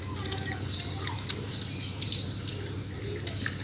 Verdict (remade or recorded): recorded